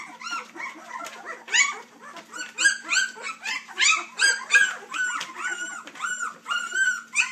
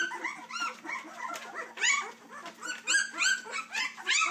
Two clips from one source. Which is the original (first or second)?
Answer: second